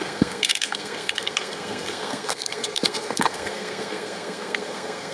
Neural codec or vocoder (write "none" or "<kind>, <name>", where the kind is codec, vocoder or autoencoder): codec, SNAC